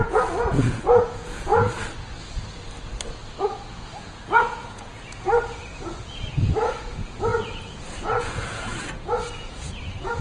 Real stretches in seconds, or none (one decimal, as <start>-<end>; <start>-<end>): 1.5-3.4